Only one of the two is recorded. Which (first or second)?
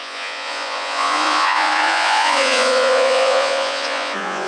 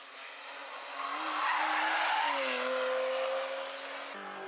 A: second